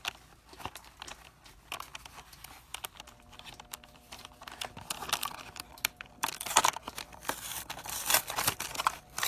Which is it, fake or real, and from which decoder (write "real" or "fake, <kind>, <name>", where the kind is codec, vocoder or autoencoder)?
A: fake, vocoder, BigVGAN v2